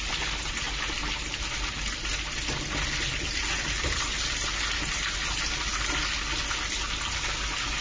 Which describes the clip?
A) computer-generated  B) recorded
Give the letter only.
B